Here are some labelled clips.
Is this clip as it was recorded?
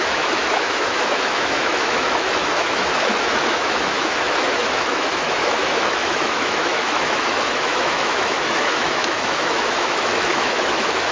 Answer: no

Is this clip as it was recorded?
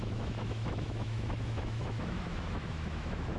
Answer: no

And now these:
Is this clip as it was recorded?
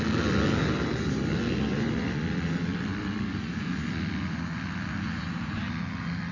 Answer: yes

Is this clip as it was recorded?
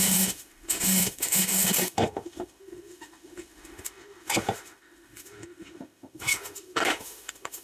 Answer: no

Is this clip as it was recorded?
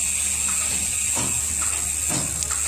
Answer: yes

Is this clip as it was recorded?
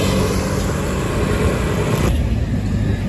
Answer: yes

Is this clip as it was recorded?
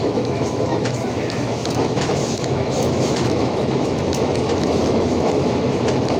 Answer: no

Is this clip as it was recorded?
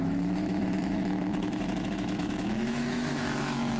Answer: no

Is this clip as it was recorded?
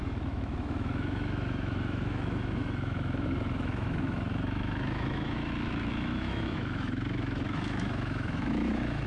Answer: no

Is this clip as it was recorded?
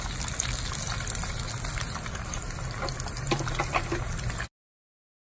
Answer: yes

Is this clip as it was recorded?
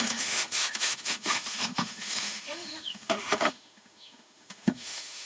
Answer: no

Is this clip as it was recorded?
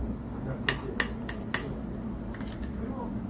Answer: yes